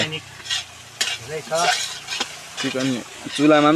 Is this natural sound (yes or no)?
yes